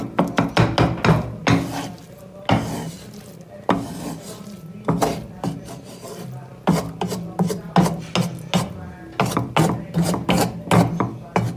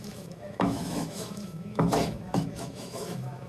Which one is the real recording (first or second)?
first